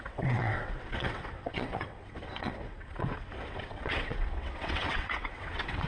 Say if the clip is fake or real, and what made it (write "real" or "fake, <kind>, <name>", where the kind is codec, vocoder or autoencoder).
fake, vocoder, WaveNeXt